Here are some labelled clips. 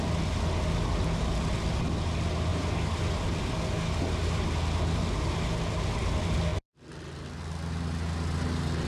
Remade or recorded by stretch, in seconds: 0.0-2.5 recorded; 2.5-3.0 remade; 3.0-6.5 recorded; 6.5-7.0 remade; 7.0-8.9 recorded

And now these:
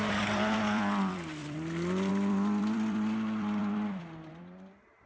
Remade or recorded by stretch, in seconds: 0.0-5.1 remade

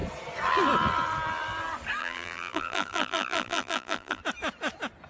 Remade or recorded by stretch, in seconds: 0.0-2.0 recorded; 2.0-4.2 remade; 4.2-5.1 recorded